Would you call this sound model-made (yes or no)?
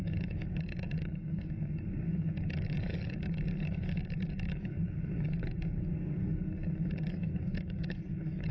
yes